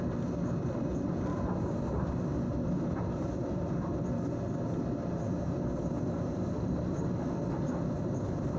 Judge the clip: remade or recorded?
recorded